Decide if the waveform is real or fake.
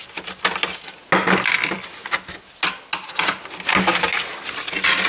real